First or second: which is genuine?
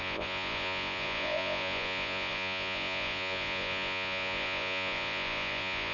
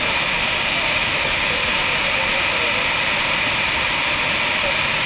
second